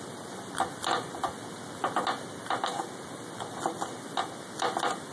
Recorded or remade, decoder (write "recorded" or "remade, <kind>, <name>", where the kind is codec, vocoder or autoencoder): recorded